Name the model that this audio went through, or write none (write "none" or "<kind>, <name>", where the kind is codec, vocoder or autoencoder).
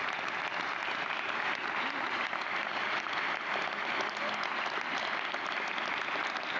none